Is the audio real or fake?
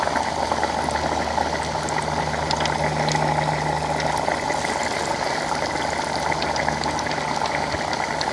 real